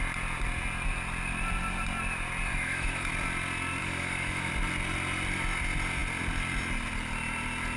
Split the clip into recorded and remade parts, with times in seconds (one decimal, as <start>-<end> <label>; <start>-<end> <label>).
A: 0.0-2.5 recorded; 2.5-3.1 remade; 3.1-3.8 recorded; 3.8-4.5 remade; 4.5-7.8 recorded